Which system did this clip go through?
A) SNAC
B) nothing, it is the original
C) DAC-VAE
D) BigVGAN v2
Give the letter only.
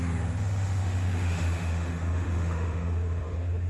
C